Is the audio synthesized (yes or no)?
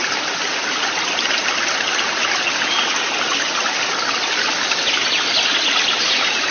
no